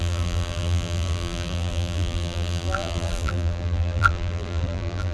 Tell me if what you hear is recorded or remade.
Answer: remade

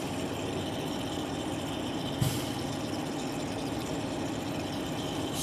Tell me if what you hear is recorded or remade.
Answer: recorded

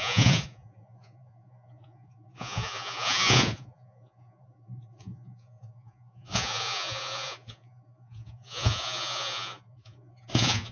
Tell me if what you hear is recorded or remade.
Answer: remade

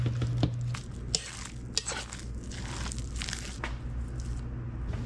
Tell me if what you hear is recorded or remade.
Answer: recorded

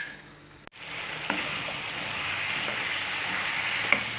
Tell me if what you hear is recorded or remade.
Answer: recorded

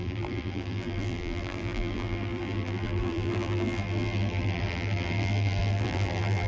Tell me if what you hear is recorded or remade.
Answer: remade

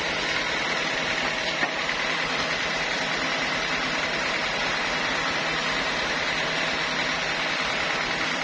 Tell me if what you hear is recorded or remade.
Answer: recorded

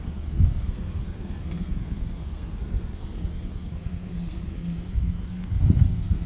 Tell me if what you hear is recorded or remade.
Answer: remade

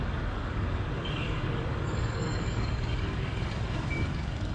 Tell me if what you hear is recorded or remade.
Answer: remade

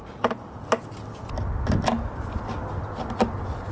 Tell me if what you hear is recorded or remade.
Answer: recorded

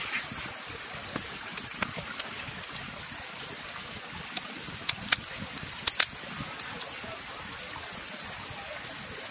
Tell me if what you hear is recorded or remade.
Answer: recorded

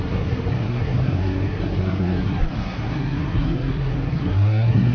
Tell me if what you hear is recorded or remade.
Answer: remade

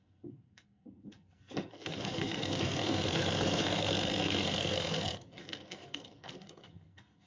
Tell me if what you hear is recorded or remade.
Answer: remade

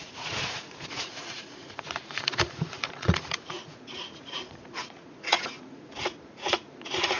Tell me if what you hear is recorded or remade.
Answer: remade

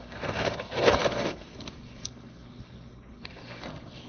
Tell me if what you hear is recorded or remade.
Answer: remade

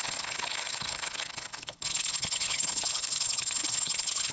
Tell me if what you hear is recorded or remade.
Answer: remade